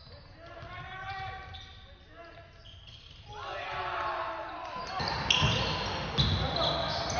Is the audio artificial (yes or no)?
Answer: no